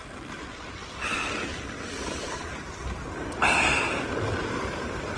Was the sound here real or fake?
real